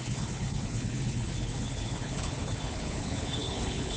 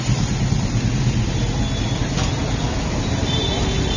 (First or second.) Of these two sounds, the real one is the second